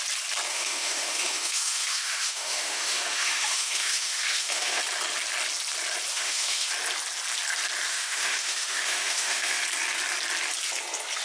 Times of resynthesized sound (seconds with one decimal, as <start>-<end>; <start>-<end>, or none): 0.5-4.8; 6.1-6.7; 7.9-9.6